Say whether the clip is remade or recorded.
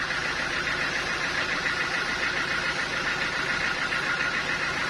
recorded